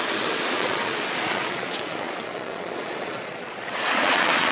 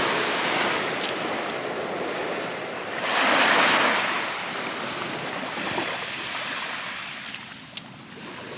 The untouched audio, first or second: second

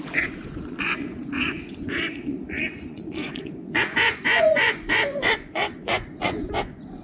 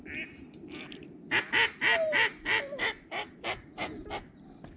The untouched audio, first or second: second